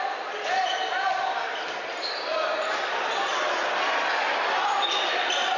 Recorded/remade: recorded